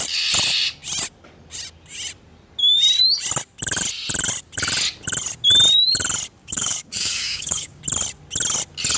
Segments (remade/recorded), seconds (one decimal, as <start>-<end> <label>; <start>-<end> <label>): 0.0-6.4 recorded; 6.4-7.8 remade; 7.8-9.0 recorded